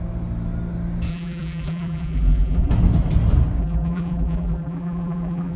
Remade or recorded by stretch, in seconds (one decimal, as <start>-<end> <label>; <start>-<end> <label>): 0.0-1.1 recorded; 1.1-2.7 remade; 2.7-3.6 recorded; 3.6-5.6 remade